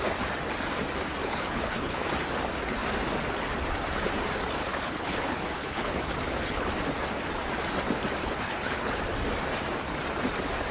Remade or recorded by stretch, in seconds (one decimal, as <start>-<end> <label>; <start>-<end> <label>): 0.0-1.2 recorded; 1.2-2.2 remade; 2.2-4.6 recorded; 4.6-6.7 remade; 6.7-8.2 recorded; 8.2-9.0 remade; 9.0-10.7 recorded